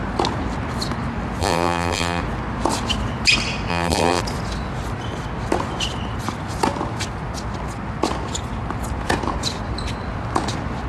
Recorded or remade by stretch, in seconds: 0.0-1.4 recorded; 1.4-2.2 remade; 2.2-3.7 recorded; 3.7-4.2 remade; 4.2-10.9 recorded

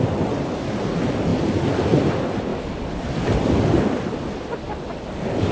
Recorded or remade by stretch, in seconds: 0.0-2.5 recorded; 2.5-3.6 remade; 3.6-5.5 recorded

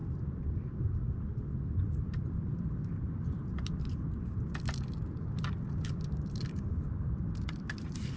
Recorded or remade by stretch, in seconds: 0.0-0.9 remade; 0.9-1.3 recorded; 1.3-3.2 remade; 3.2-8.2 recorded